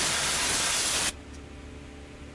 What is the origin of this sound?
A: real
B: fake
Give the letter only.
A